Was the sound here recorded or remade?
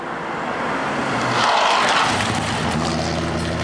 recorded